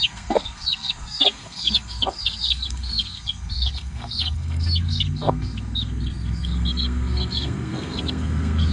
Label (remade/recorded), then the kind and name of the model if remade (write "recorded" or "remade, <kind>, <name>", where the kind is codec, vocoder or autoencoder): remade, codec, SNAC